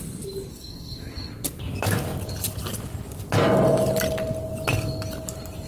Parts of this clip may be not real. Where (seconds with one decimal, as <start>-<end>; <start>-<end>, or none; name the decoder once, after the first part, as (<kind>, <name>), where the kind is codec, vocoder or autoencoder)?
0.5-1.3 (codec, SNAC)